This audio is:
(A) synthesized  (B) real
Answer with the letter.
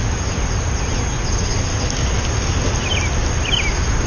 B